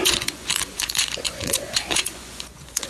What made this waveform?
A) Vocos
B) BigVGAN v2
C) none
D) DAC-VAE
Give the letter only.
A